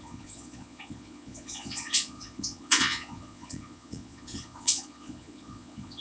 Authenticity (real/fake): fake